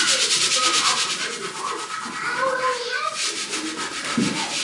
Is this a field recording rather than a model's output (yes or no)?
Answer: yes